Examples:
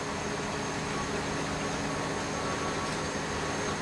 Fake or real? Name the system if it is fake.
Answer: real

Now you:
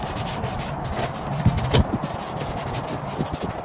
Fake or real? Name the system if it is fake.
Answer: real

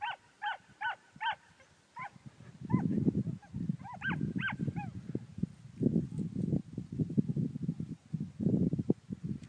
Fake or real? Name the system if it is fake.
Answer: real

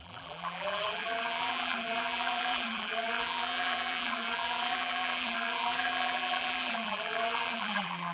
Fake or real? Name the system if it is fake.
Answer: fake, vocoder, BigVGAN v2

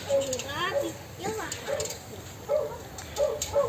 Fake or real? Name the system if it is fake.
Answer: real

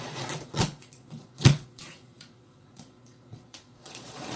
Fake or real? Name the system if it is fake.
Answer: fake, vocoder, Vocos